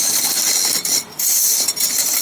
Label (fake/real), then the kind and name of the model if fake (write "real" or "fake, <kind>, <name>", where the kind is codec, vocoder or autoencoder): real